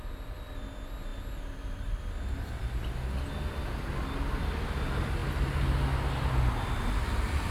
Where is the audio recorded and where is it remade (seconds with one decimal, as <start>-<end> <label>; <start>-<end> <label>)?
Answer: 0.0-7.5 recorded